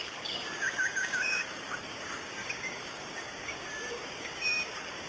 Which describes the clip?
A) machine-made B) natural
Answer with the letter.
A